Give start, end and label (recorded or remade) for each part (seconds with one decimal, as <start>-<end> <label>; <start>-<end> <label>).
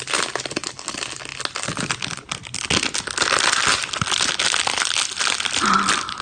0.0-6.2 recorded